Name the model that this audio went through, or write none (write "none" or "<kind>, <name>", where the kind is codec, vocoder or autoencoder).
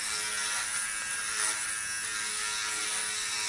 none